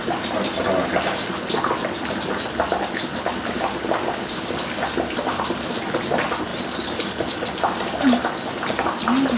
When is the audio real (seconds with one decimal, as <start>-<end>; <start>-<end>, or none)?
0.0-9.4